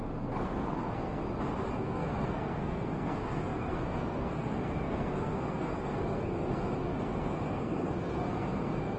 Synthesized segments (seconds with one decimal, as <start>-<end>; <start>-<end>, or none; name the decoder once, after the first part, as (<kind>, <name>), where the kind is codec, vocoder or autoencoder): 0.0-1.2 (codec, SNAC); 1.7-9.0